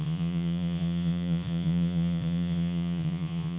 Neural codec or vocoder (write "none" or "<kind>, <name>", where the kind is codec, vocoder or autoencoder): vocoder, Vocos